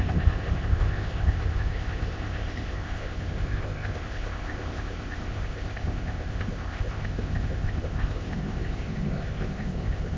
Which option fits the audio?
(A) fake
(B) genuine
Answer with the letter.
A